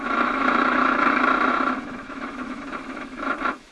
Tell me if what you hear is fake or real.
fake